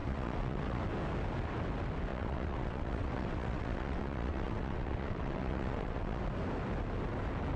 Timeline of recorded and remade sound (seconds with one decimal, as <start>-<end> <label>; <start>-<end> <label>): 0.0-0.8 remade; 0.8-2.1 recorded; 2.1-6.2 remade; 6.2-7.6 recorded

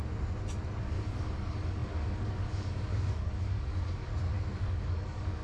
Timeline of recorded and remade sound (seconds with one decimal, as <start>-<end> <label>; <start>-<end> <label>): 0.0-0.8 recorded; 0.8-4.1 remade; 4.1-4.6 recorded; 4.6-5.4 remade

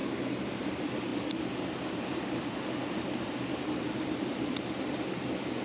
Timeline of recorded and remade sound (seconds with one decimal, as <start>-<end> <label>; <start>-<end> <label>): 0.0-5.6 recorded

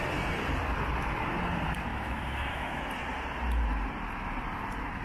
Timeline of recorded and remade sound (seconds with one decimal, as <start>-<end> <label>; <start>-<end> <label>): 0.0-1.9 recorded; 1.9-2.8 remade; 2.8-5.0 recorded

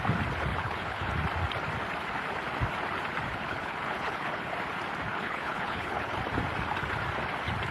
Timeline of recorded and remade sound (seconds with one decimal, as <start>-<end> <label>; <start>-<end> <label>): 0.0-0.5 recorded; 0.5-1.1 remade; 1.1-3.4 recorded; 3.4-4.5 remade; 4.5-5.1 recorded; 5.1-6.2 remade; 6.2-7.7 recorded

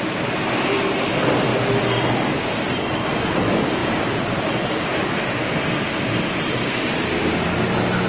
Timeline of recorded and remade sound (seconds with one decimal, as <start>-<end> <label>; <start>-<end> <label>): 0.0-8.1 recorded